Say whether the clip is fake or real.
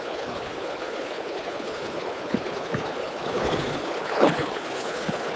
fake